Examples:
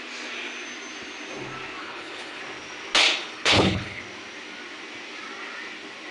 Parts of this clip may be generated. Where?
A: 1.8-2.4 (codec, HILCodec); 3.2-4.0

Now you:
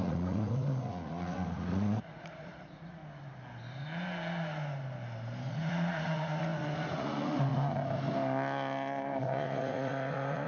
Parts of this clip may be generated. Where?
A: 0.0-3.0 (vocoder, Vocos); 5.5-7.5; 9.2-10.5

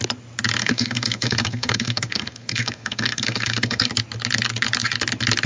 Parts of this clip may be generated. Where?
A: 0.6-3.9 (codec, SNAC)

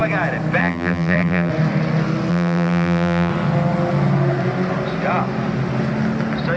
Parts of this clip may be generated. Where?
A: 0.6-1.5 (vocoder, BigVGAN v2); 2.3-3.3

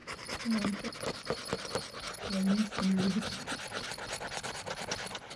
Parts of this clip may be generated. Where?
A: none

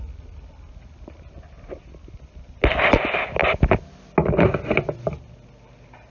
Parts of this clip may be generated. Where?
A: none

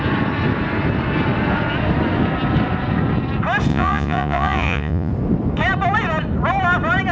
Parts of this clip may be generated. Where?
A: 3.7-5.1 (vocoder, Vocos)